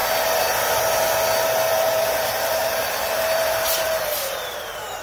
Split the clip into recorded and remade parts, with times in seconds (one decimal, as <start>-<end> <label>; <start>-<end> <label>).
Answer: 0.0-1.7 recorded; 1.7-5.0 remade

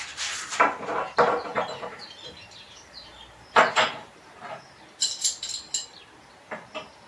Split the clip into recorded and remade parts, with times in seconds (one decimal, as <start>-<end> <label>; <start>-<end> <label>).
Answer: 0.0-1.5 recorded; 1.5-4.4 remade; 4.4-7.1 recorded

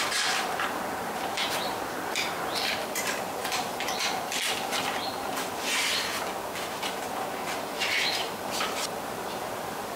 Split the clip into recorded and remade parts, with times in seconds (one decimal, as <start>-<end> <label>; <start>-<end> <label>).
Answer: 0.0-3.4 remade; 3.4-8.6 recorded; 8.6-10.0 remade

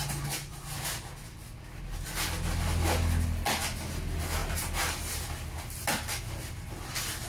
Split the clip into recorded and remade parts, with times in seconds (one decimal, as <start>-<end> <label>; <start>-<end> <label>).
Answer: 0.0-4.4 recorded; 4.4-5.5 remade; 5.5-7.3 recorded